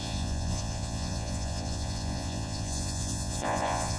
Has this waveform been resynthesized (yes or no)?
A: yes